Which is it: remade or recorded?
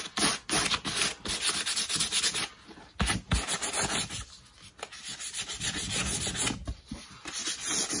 recorded